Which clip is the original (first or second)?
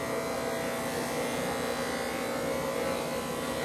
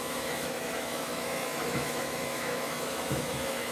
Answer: first